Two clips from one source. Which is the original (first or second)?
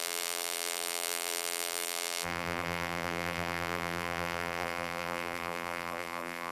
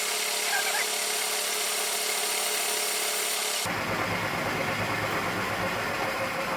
second